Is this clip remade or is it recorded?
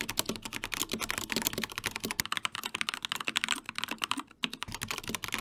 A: recorded